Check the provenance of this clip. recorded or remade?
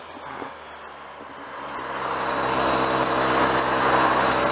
recorded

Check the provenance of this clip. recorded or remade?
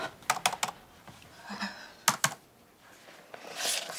recorded